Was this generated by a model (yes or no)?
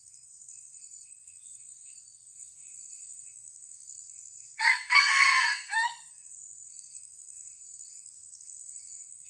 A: yes